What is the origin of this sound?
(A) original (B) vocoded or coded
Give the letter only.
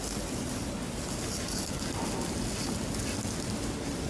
A